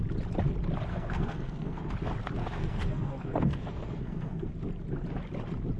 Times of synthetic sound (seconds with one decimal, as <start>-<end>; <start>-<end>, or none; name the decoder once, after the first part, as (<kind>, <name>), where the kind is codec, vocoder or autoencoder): 0.9-1.9 (codec, SNAC); 2.4-4.5